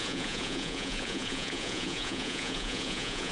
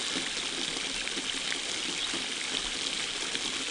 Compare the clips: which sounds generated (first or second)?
first